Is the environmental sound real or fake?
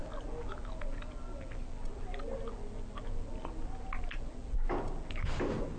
real